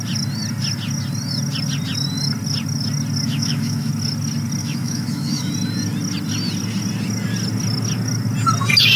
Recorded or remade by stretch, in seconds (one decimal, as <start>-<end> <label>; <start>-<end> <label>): 0.0-3.3 recorded; 3.3-3.9 remade; 3.9-4.6 recorded; 4.6-5.5 remade; 5.5-9.0 recorded